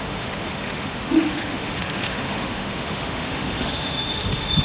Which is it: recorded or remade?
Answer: remade